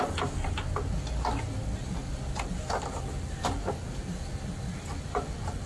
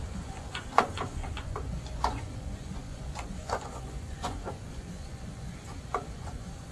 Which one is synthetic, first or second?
second